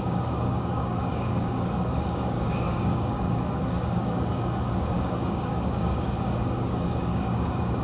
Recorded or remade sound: remade